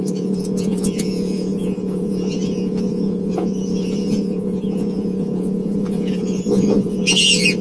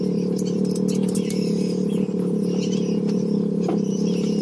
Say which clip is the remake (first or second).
first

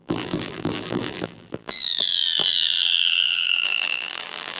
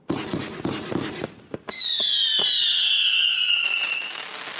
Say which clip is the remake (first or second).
first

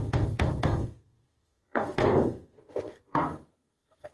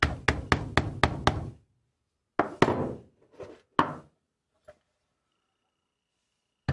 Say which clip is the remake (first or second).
first